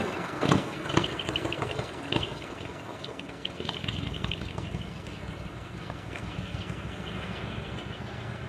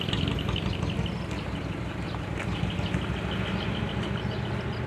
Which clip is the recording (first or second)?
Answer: second